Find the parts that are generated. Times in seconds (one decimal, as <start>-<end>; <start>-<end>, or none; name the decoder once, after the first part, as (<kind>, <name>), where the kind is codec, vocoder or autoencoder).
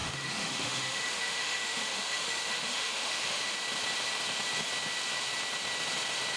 0.0-3.5 (autoencoder, DAC-VAE)